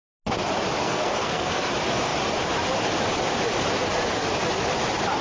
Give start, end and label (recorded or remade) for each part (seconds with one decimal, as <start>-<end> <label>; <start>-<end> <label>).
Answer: 0.0-0.8 recorded; 0.8-1.7 remade; 1.7-5.2 recorded